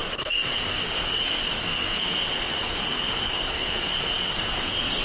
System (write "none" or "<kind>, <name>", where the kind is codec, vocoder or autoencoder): codec, SNAC